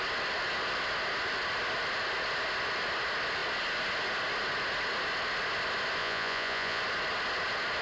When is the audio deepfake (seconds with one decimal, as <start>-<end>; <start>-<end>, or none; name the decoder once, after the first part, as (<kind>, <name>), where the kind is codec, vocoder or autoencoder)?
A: 6.0-6.8 (vocoder, Vocos)